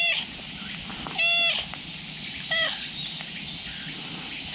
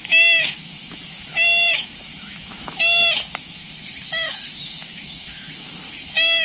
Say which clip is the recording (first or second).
first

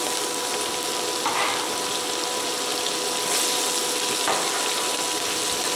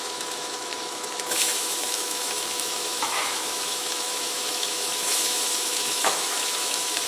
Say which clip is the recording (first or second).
first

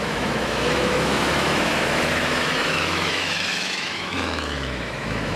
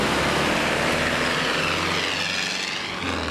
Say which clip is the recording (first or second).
second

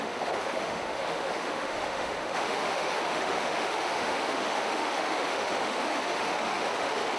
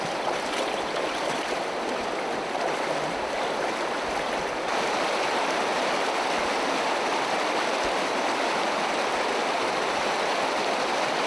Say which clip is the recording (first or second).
second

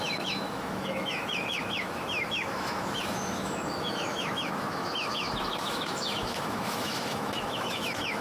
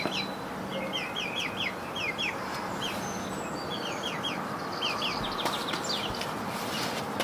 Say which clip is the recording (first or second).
second